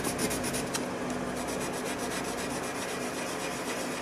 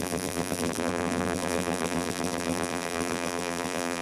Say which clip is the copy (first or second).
second